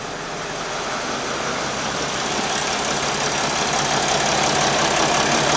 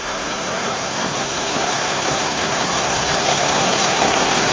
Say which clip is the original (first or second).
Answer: first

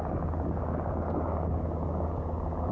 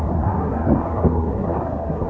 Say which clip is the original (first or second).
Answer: first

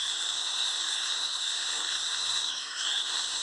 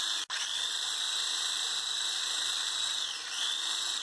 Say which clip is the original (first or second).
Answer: second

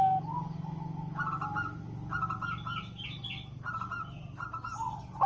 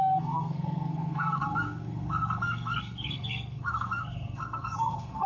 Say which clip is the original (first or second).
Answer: first